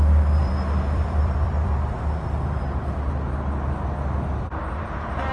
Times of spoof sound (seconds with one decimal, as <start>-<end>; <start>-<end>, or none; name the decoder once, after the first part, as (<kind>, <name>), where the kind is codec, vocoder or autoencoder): 0.4-1.9 (vocoder, BigVGAN v2)